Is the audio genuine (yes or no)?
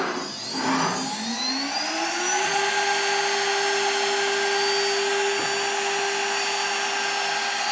yes